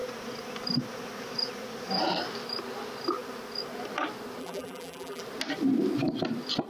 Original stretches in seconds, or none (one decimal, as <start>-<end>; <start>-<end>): 0.0-4.4; 5.2-6.7